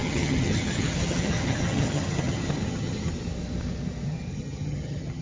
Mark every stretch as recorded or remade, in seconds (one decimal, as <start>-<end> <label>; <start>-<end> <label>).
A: 0.0-3.1 remade; 3.1-4.3 recorded; 4.3-5.2 remade